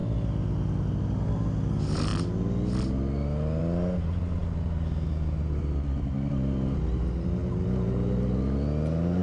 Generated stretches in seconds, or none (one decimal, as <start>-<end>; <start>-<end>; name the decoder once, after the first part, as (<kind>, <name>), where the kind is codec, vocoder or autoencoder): none